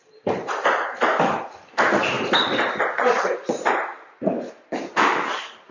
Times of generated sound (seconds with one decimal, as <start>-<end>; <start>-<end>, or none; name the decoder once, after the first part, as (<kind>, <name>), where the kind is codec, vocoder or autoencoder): 0.0-0.5 (vocoder, BigVGAN v2); 2.9-5.7